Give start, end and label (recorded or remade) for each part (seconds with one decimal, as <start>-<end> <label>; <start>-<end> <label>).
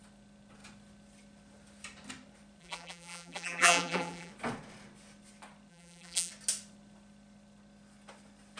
0.0-2.6 recorded; 2.6-4.3 remade; 4.3-5.7 recorded; 5.7-6.3 remade; 6.3-8.6 recorded